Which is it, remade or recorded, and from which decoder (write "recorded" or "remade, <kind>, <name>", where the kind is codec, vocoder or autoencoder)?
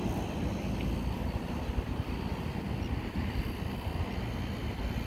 recorded